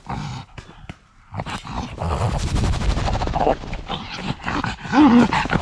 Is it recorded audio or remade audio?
recorded